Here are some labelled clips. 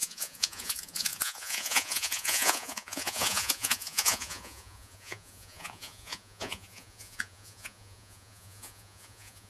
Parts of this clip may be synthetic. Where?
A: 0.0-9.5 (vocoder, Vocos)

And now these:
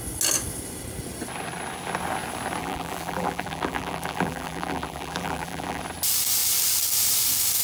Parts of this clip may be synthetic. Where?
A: 2.6-5.8 (vocoder, BigVGAN v2)

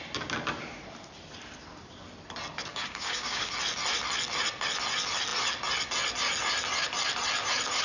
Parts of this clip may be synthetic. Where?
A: 2.7-3.5 (codec, DAC)

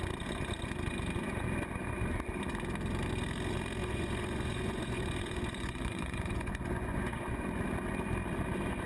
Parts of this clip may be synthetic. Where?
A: 3.8-7.5 (vocoder, Vocos)

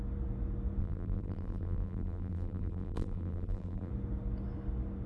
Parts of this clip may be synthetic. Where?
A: 0.8-3.9 (vocoder, BigVGAN v2)

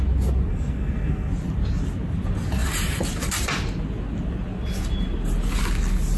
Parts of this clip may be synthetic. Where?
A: 0.5-1.3 (codec, SNAC)

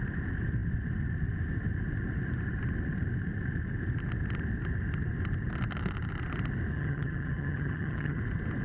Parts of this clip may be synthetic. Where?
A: 6.7-8.2 (vocoder, HiFi-GAN)

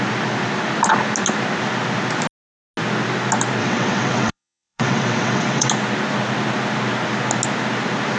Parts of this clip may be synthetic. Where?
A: 3.6-5.7 (vocoder, WaveNeXt)